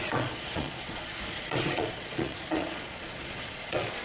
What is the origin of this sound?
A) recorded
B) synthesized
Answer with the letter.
B